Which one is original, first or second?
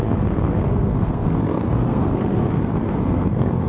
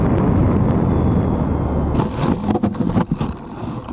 second